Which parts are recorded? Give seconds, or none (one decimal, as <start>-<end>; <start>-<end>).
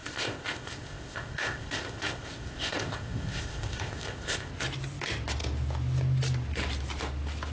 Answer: 4.5-7.5